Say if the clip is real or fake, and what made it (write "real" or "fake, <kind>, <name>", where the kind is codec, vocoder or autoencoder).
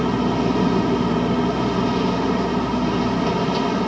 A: real